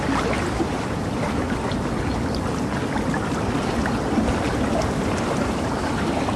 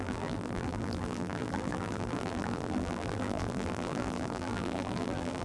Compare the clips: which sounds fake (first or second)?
second